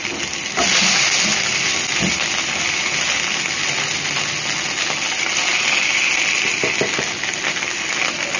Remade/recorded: recorded